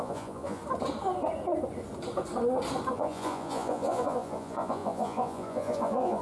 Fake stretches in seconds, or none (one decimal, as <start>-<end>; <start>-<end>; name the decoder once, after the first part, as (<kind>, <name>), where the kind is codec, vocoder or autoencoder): 0.0-0.6 (vocoder, Vocos); 2.9-6.2